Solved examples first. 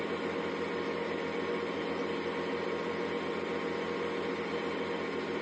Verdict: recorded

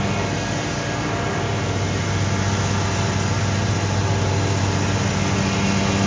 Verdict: recorded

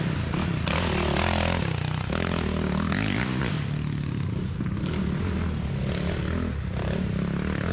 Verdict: recorded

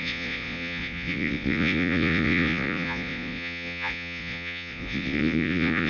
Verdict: remade